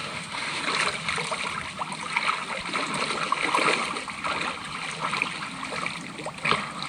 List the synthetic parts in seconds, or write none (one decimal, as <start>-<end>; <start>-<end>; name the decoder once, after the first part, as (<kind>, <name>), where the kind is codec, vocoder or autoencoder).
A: 0.0-0.6 (autoencoder, DAC-VAE)